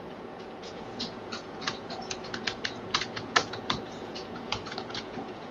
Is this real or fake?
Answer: fake